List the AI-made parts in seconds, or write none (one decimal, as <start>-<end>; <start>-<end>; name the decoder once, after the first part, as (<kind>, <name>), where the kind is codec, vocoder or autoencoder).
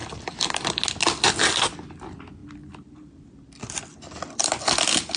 0.0-0.6 (vocoder, BigVGAN v2); 2.4-4.6